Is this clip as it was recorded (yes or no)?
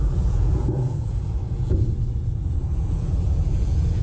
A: no